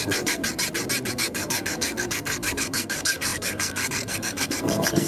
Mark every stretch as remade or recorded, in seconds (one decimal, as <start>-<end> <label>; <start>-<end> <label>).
0.0-0.4 remade; 0.4-1.1 recorded; 1.1-5.1 remade